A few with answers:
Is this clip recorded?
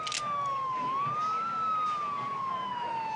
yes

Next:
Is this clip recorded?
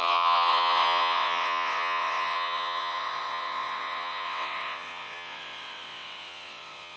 no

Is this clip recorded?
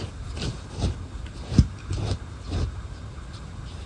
yes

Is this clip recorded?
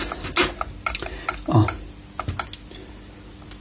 yes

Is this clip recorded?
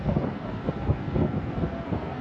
no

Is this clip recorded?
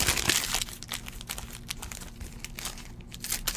yes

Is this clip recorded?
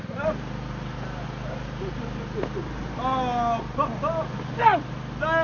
yes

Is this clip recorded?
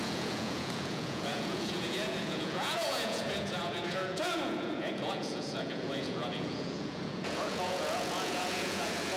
no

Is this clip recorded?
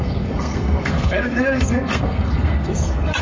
no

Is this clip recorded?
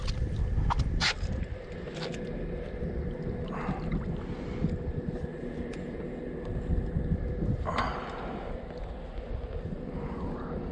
yes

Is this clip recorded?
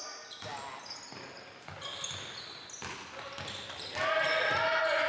yes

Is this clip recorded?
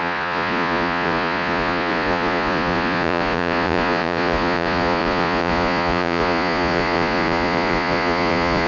no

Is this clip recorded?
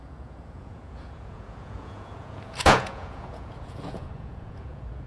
no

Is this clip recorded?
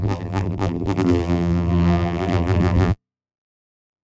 no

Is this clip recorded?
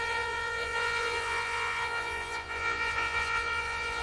no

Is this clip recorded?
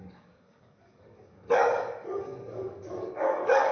no